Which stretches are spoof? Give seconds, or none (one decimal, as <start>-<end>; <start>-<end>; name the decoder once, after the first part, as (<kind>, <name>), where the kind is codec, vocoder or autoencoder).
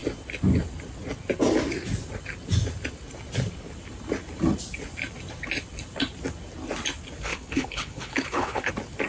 7.3-8.7 (codec, HILCodec)